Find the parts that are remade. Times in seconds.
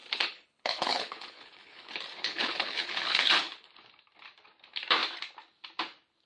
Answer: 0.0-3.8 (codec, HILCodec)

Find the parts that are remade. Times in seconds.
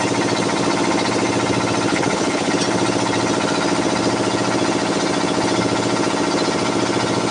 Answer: 1.9-2.5 (codec, HILCodec)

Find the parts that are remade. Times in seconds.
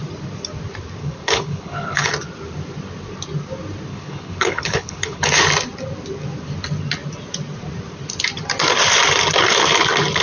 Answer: 1.0-2.1 (codec, HILCodec); 3.9-5.4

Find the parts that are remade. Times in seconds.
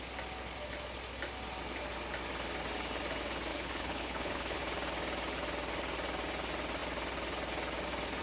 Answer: 3.5-4.6 (codec, HILCodec)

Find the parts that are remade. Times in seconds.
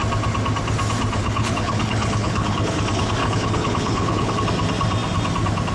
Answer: 1.2-2.8 (codec, HILCodec); 3.2-4.3